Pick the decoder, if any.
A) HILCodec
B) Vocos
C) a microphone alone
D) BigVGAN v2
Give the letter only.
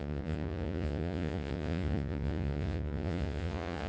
B